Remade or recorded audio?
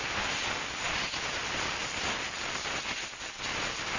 recorded